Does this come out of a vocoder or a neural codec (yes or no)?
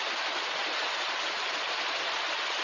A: no